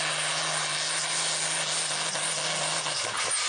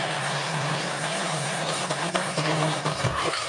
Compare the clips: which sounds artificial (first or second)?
second